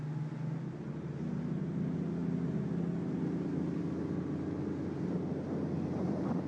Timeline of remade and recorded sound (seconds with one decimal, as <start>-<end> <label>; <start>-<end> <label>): 0.0-6.5 recorded